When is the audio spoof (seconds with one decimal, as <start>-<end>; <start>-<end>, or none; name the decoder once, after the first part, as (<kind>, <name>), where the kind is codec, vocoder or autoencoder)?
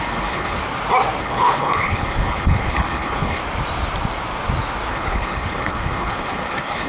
0.0-0.6 (codec, HILCodec); 1.2-3.4; 4.9-6.9